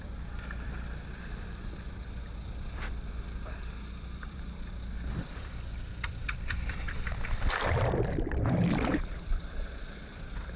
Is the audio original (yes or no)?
no